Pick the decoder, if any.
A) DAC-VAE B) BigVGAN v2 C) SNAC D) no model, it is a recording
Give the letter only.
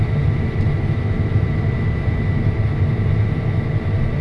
B